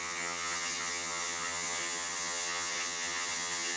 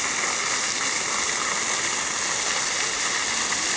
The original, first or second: second